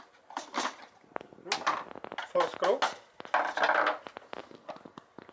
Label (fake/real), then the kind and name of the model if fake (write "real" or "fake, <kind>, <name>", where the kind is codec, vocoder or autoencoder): real